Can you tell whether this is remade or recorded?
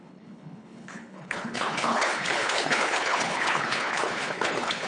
remade